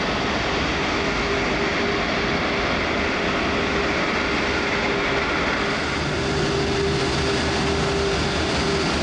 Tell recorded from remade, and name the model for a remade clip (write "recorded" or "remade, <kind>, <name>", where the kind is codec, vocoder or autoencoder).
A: recorded